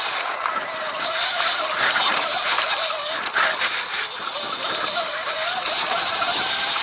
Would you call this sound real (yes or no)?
yes